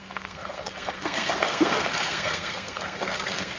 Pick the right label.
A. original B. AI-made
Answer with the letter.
B